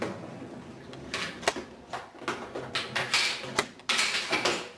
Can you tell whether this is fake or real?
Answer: real